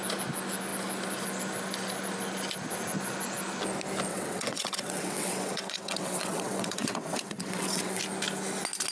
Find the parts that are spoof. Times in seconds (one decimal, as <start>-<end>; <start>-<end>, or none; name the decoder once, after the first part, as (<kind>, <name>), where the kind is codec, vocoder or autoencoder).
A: 4.1-8.0 (vocoder, WaveNeXt)